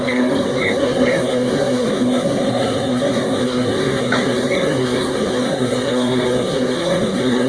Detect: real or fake fake